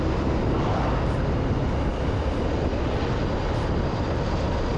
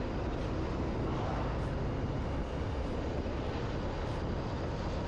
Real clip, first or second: second